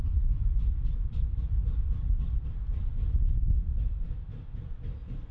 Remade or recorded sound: recorded